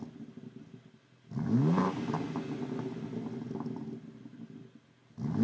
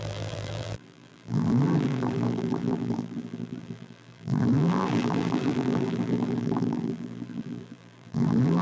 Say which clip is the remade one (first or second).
second